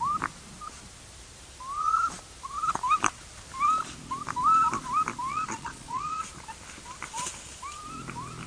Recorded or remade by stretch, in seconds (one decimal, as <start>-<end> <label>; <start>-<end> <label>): 0.0-5.3 recorded; 5.3-6.2 remade; 6.2-8.5 recorded